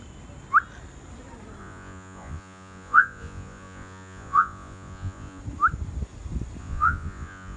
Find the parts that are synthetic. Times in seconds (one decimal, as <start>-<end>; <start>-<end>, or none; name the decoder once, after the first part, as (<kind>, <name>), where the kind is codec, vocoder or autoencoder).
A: 1.6-5.4 (vocoder, Vocos); 6.6-7.6